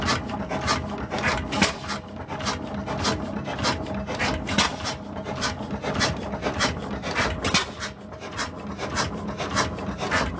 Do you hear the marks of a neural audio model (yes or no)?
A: no